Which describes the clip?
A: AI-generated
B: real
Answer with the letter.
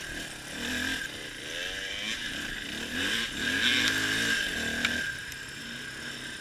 B